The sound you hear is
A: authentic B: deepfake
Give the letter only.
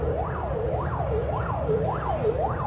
A